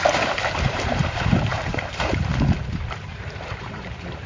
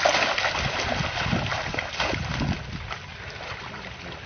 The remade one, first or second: first